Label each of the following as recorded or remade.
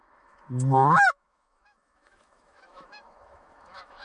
remade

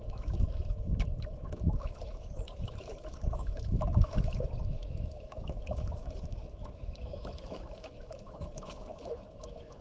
remade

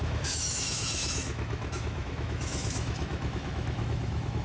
remade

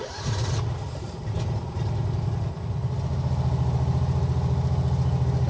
recorded